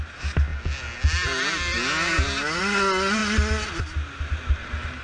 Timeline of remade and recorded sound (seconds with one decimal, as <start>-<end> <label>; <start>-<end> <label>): 0.0-5.0 recorded